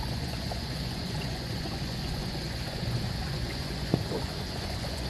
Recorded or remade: remade